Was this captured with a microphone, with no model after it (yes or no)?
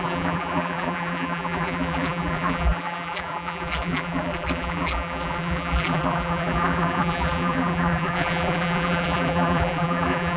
no